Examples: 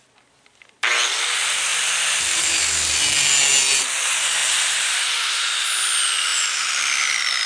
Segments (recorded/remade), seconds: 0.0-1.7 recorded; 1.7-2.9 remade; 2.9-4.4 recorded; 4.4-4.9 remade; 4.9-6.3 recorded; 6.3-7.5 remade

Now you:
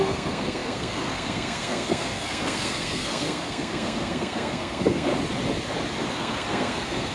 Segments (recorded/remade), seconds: 0.0-5.1 remade; 5.1-6.1 recorded; 6.1-7.1 remade